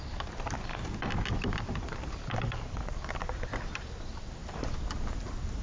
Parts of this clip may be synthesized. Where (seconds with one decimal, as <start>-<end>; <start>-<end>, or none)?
none